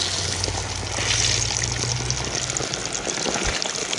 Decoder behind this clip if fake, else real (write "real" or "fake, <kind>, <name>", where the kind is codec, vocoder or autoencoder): real